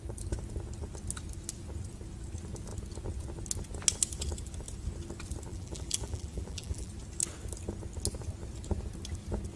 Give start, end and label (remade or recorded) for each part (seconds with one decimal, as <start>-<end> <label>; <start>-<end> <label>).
0.0-5.5 recorded; 5.5-6.9 remade; 6.9-9.6 recorded